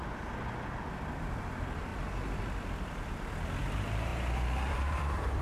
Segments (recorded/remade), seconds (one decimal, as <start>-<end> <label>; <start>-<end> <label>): 0.0-1.4 recorded; 1.4-1.9 remade; 1.9-3.6 recorded; 3.6-5.4 remade